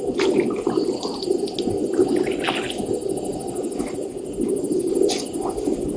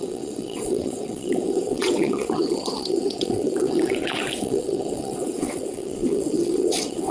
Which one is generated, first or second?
second